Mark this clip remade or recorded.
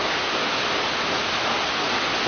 recorded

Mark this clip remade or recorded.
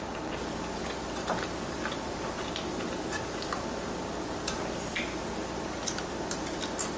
recorded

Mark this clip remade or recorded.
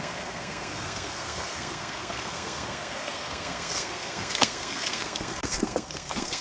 remade